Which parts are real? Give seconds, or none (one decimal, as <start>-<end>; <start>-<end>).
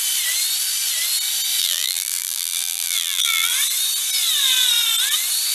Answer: 0.0-1.6; 3.5-5.5